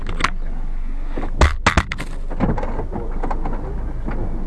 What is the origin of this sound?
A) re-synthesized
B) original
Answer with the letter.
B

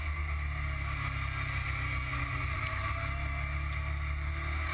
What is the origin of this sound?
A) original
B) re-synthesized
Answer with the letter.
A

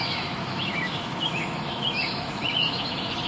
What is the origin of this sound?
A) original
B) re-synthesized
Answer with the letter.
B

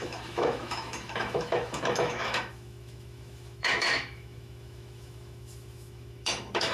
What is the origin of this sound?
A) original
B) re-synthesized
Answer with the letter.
B